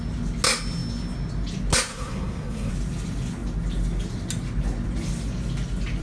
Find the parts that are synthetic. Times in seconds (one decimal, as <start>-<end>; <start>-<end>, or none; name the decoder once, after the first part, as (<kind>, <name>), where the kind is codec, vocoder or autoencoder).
1.9-2.7 (codec, SNAC)